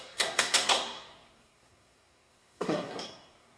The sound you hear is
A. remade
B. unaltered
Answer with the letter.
A